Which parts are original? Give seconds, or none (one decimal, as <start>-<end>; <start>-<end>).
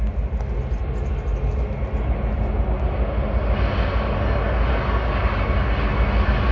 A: 0.0-6.5